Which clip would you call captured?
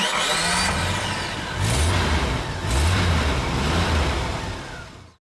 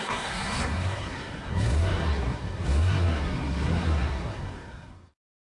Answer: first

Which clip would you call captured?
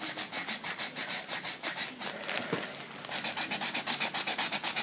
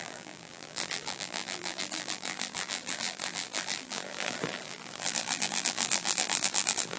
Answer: first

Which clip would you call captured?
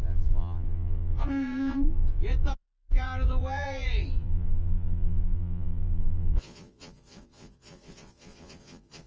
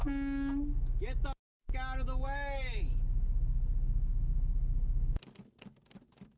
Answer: second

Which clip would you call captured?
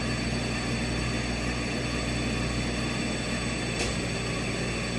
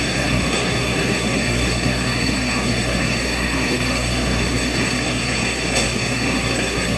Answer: first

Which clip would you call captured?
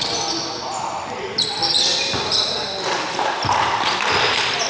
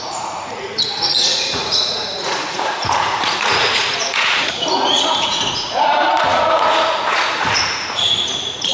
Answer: first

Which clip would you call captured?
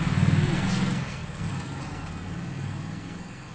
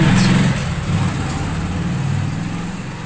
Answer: second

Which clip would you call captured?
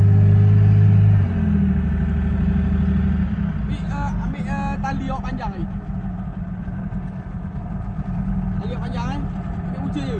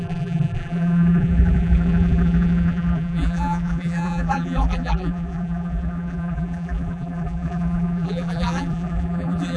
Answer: first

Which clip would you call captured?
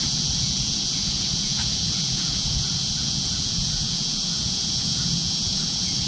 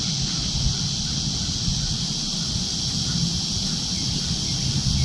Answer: second